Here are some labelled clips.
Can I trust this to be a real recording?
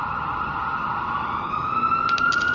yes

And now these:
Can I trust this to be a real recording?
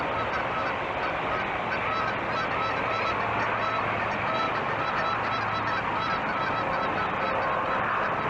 yes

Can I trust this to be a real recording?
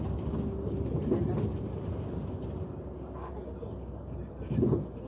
yes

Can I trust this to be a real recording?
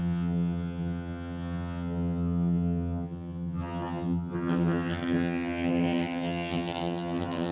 no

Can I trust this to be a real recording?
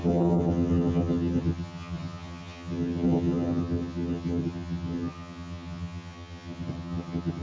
no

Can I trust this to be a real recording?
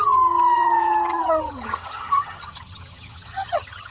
no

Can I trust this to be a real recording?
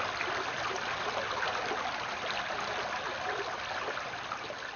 yes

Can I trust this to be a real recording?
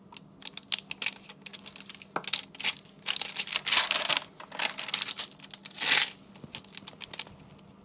yes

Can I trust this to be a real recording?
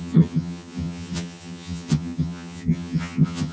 no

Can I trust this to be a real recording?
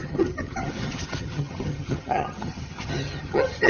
no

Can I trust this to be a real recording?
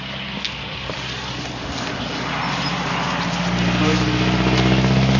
yes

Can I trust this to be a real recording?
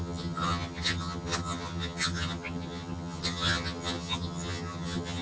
no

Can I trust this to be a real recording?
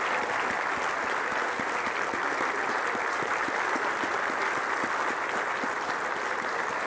yes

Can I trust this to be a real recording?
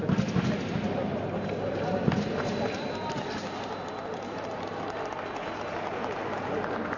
yes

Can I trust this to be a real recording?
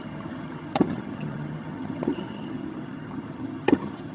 no